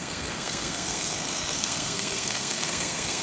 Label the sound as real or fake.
fake